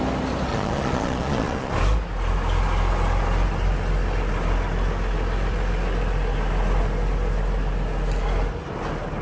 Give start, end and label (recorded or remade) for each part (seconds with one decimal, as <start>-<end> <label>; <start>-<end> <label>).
0.0-0.5 recorded; 0.5-1.7 remade; 1.7-9.2 recorded